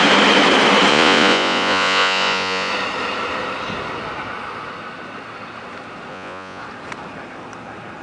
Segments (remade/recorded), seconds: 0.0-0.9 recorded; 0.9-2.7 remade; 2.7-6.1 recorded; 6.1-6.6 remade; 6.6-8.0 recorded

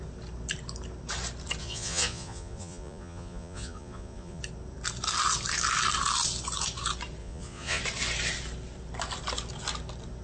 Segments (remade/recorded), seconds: 0.0-1.6 recorded; 1.6-4.4 remade; 4.4-7.2 recorded; 7.2-7.8 remade; 7.8-10.2 recorded

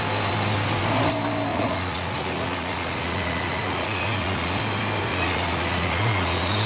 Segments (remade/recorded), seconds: 0.0-1.5 recorded; 1.5-4.6 remade; 4.6-5.1 recorded; 5.1-6.7 remade

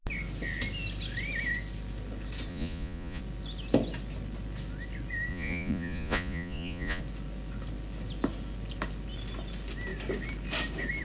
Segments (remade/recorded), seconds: 0.0-2.5 recorded; 2.5-3.2 remade; 3.2-5.3 recorded; 5.3-7.0 remade; 7.0-11.0 recorded

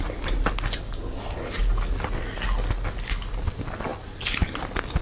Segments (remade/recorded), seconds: 0.0-5.0 recorded

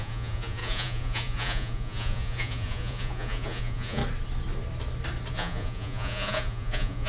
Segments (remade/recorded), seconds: 0.0-4.0 remade; 4.0-5.3 recorded; 5.3-7.1 remade

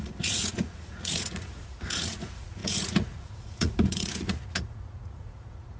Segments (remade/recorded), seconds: 0.0-5.8 remade